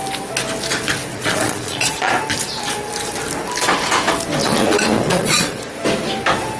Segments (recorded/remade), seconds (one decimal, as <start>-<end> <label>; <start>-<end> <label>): 0.0-1.1 recorded; 1.1-2.1 remade; 2.1-4.4 recorded; 4.4-5.7 remade; 5.7-6.6 recorded